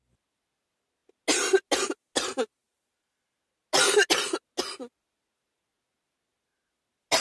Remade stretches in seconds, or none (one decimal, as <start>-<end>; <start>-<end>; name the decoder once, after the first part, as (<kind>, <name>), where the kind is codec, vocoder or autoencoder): none